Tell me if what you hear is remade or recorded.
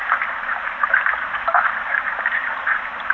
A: remade